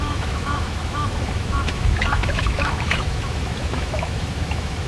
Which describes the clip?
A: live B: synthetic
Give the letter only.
B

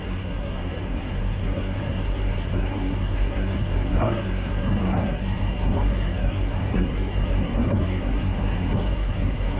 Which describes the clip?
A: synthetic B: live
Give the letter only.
A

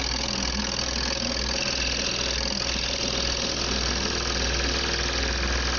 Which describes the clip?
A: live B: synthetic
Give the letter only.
A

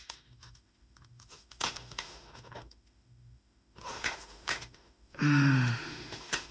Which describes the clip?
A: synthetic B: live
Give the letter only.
A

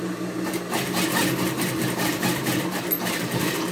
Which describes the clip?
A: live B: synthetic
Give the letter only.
A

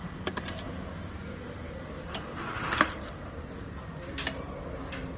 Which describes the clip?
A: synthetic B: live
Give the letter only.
B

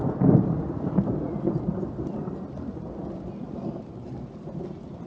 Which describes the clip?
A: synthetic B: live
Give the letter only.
B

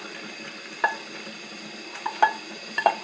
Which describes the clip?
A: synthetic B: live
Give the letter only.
B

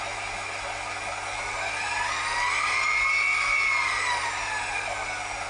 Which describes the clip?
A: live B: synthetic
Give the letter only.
A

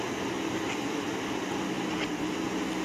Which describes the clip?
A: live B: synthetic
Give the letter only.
A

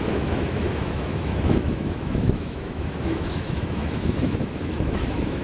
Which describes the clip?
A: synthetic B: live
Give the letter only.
A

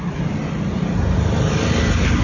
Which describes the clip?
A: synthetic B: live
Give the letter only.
B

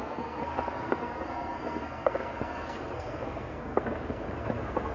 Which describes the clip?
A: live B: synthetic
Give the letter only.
B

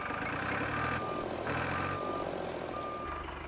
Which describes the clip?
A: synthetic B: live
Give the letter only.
B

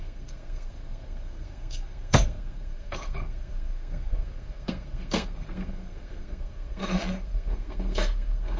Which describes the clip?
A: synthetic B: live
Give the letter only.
A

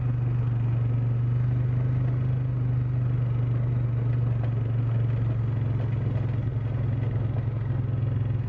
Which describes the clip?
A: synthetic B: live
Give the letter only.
B